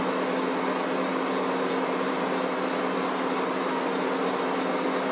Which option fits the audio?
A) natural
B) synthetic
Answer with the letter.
A